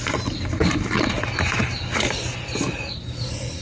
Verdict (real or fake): real